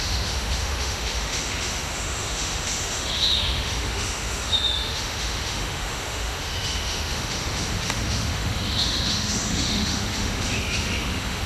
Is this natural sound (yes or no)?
no